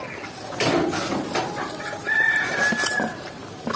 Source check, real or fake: real